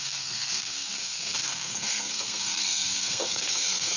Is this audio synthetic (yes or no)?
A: yes